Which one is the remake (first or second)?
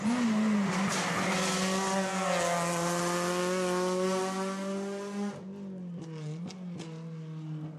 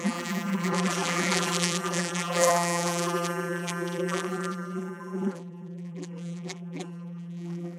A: second